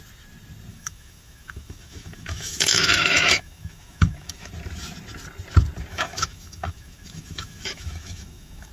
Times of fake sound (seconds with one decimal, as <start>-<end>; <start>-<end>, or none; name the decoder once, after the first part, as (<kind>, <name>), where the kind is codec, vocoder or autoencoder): 0.7-4.5 (autoencoder, DAC-VAE); 5.9-8.7